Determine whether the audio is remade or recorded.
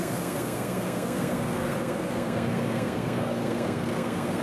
remade